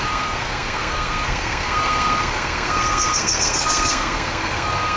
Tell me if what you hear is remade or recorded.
remade